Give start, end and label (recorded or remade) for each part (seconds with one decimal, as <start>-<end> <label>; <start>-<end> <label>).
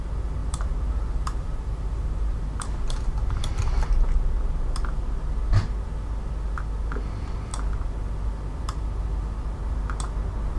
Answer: 0.0-0.4 recorded; 0.4-3.4 remade; 3.4-10.6 recorded